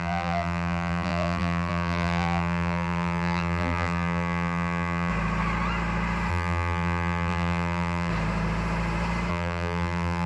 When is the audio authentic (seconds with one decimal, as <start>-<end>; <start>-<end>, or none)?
5.1-6.3; 8.1-9.3